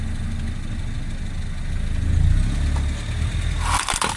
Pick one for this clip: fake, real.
real